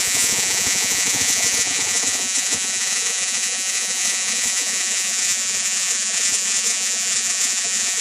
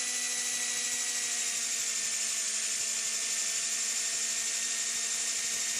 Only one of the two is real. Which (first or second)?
second